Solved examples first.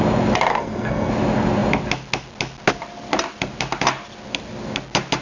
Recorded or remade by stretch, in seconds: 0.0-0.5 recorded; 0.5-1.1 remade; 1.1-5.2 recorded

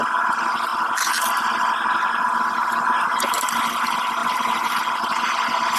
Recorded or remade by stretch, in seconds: 0.0-2.6 recorded; 2.6-3.4 remade; 3.4-4.2 recorded; 4.2-5.3 remade; 5.3-5.8 recorded

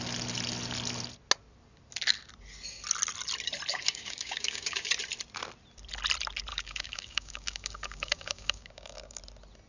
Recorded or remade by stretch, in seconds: 0.0-3.7 recorded; 3.7-4.9 remade; 4.9-6.5 recorded; 6.5-9.2 remade; 9.2-9.7 recorded

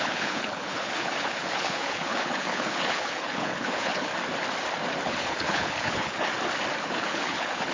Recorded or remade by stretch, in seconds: 0.0-4.1 remade; 4.1-5.0 recorded; 5.0-6.3 remade; 6.3-6.8 recorded; 6.8-7.7 remade

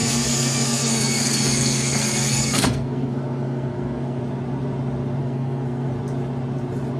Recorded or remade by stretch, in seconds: 0.0-4.2 remade; 4.2-5.2 recorded; 5.2-5.9 remade; 5.9-7.0 recorded